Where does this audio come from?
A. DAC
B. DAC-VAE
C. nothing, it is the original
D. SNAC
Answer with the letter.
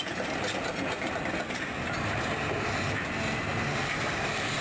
C